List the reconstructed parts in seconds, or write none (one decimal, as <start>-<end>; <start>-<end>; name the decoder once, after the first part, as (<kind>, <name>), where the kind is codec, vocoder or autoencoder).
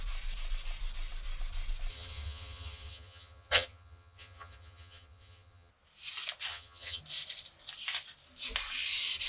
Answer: 1.9-5.7 (vocoder, HiFi-GAN); 6.5-7.0